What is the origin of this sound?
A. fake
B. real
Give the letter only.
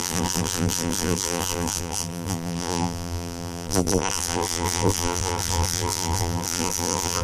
A